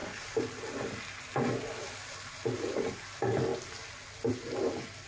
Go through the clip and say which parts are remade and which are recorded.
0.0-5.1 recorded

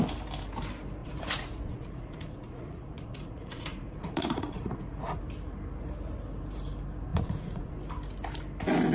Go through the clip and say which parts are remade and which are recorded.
0.0-1.0 recorded; 1.0-5.2 remade; 5.2-7.1 recorded; 7.1-7.7 remade; 7.7-8.9 recorded

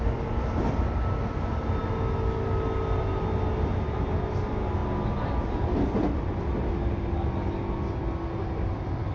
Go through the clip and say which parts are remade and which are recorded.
0.0-9.1 recorded